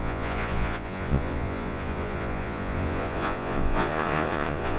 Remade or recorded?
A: remade